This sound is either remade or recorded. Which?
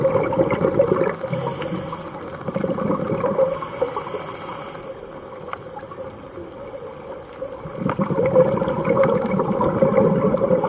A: recorded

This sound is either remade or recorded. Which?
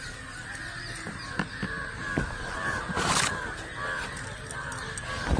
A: recorded